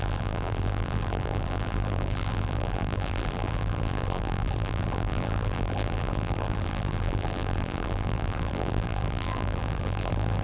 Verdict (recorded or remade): remade